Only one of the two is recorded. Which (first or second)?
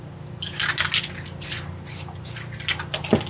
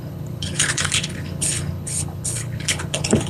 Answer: first